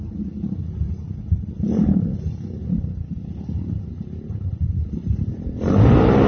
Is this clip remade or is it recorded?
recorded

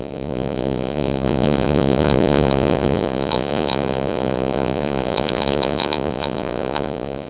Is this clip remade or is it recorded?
remade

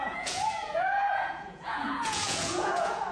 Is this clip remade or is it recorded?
remade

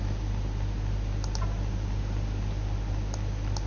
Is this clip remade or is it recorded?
recorded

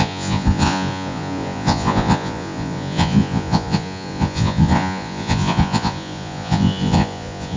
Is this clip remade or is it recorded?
remade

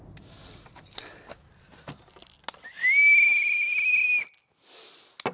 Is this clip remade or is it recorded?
recorded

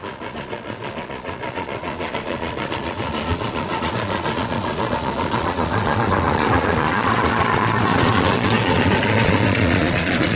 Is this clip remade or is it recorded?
remade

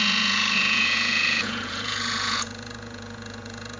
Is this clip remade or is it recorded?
remade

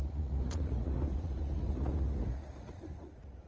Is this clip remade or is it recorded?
remade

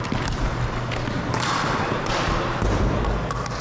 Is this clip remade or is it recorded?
recorded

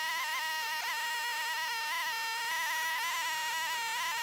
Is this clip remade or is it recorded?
recorded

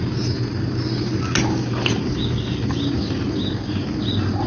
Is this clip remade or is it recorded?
recorded